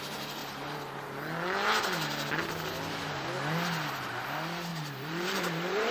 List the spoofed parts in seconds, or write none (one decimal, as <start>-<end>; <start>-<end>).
4.7-5.9